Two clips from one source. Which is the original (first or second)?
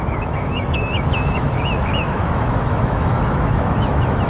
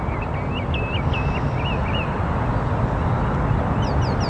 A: second